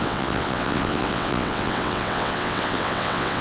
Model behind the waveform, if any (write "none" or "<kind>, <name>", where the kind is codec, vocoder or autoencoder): vocoder, WaveNeXt